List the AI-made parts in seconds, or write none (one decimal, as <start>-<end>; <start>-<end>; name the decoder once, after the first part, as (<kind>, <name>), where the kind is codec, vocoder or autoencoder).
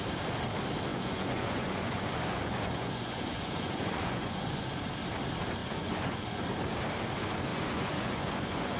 0.9-4.8 (vocoder, Vocos); 5.6-6.4; 7.5-8.8